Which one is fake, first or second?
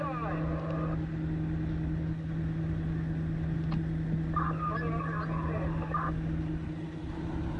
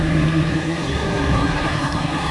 second